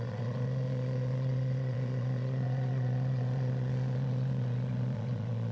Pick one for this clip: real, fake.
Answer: fake